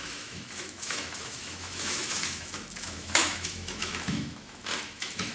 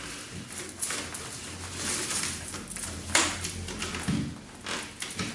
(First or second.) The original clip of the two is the second